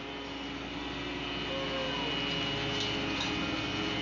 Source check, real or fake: real